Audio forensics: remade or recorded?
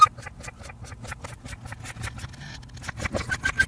recorded